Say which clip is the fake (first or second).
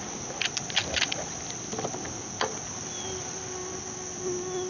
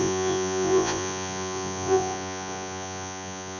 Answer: second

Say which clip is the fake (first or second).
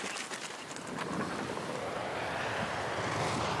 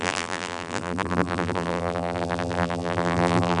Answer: second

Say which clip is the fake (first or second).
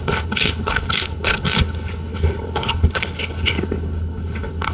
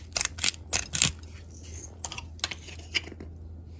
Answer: first